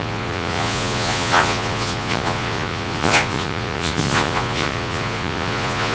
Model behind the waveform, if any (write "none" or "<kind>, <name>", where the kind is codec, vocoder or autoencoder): vocoder, Vocos